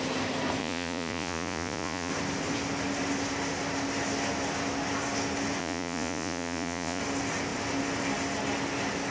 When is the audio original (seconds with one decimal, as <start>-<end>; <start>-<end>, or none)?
0.0-0.6; 2.1-5.6; 7.0-9.1